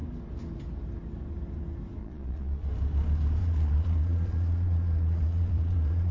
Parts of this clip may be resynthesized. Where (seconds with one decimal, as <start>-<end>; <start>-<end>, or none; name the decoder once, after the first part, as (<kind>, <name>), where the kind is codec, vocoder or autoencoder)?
2.0-2.7 (vocoder, Vocos); 3.4-6.1